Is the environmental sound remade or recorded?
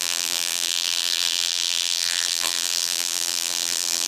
remade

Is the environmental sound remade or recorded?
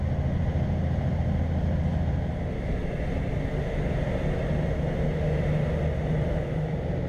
recorded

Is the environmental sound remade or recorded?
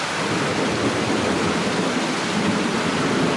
recorded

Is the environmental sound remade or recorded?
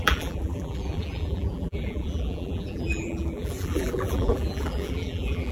remade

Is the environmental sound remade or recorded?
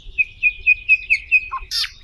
remade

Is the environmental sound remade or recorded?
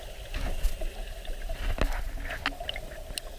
recorded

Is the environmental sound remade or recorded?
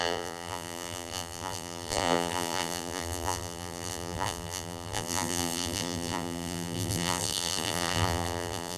remade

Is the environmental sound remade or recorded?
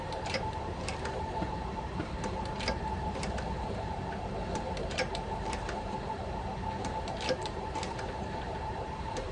remade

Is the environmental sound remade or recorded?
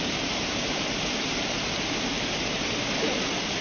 remade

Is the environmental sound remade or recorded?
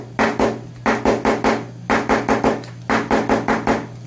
recorded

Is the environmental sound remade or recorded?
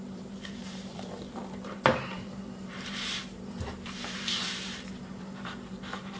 remade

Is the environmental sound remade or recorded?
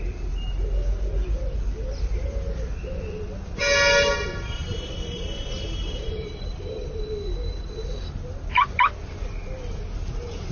recorded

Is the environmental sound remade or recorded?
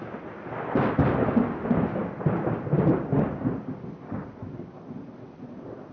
remade